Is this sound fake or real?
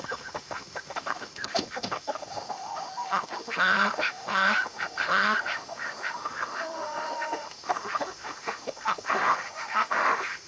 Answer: fake